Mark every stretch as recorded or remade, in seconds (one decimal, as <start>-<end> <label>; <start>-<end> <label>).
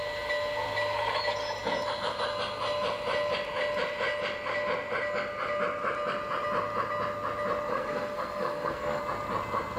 0.0-7.7 recorded; 7.7-9.0 remade; 9.0-9.8 recorded